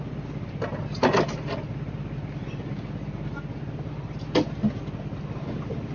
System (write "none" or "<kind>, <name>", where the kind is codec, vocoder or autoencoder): none